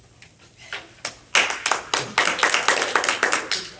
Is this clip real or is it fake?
real